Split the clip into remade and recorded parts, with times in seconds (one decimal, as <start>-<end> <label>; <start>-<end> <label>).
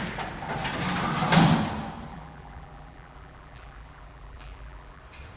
0.0-2.1 recorded; 2.1-5.0 remade; 5.0-5.4 recorded